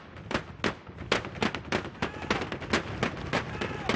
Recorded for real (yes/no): yes